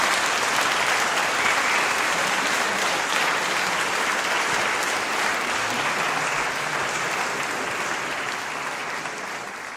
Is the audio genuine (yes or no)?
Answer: yes